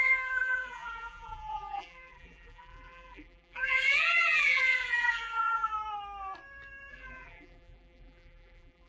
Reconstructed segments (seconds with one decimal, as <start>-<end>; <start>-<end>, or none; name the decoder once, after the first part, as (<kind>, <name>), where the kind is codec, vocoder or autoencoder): 0.0-5.7 (vocoder, BigVGAN v2); 6.9-8.9